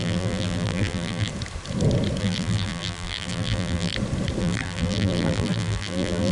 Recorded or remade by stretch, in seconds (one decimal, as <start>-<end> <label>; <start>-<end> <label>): 0.0-1.3 remade; 1.3-2.2 recorded; 2.2-3.9 remade; 3.9-4.4 recorded; 4.4-6.3 remade